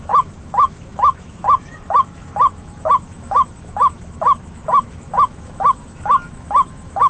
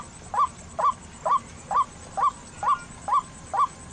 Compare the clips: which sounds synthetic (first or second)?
first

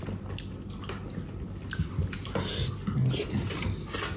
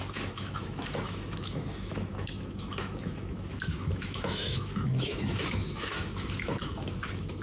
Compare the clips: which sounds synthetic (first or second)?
second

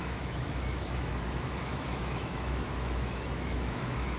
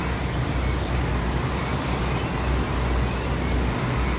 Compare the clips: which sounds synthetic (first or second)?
first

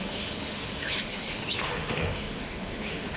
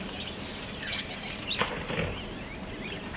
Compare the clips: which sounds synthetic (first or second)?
first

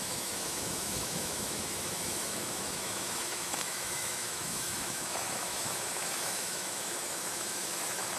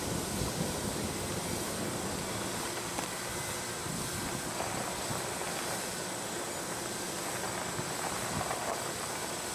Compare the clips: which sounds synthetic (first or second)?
first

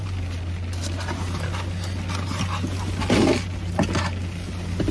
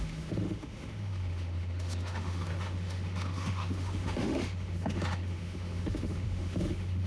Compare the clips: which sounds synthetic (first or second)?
second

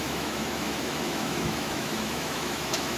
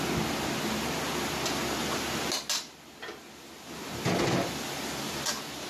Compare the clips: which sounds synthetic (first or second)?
first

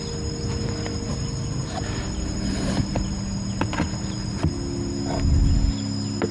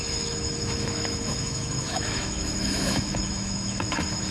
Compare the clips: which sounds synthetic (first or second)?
second